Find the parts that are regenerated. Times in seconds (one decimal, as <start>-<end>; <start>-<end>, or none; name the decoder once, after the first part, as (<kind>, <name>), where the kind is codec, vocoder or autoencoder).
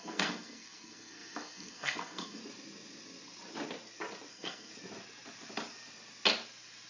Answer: 0.0-2.4 (codec, SNAC); 4.3-4.7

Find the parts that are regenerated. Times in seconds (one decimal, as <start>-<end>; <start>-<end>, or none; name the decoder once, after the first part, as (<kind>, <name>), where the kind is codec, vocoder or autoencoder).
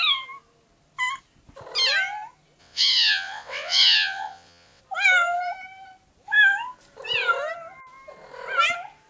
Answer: 2.6-4.8 (vocoder, WaveNeXt)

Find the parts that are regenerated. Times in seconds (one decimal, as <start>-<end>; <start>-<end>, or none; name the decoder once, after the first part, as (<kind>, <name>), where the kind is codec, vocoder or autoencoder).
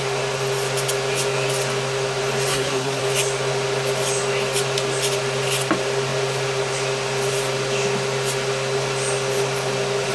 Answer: 2.5-3.0 (codec, SNAC)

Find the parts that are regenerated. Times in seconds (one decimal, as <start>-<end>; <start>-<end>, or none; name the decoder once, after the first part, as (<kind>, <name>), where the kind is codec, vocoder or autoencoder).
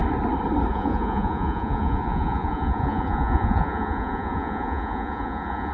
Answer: 0.7-5.7 (vocoder, Vocos)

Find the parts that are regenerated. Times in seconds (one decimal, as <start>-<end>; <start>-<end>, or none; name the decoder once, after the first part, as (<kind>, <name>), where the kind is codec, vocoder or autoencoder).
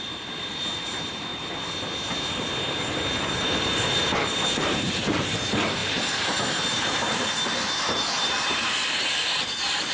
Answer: 0.0-1.3 (vocoder, BigVGAN v2); 2.7-9.9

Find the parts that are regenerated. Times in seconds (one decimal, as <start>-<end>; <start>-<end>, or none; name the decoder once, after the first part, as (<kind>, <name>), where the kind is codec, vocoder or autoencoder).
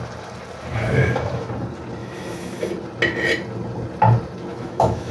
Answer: 0.7-1.5 (autoencoder, DAC-VAE); 2.0-2.7; 4.5-5.1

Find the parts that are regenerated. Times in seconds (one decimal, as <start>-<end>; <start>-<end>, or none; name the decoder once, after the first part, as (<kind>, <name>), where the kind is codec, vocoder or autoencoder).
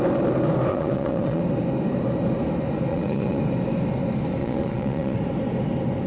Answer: 0.7-1.4 (vocoder, Vocos); 2.9-3.4; 4.4-5.2